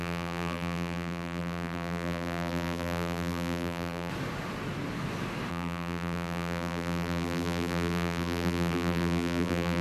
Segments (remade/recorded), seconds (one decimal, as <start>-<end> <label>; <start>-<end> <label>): 0.0-4.1 remade; 4.1-5.5 recorded; 5.5-9.8 remade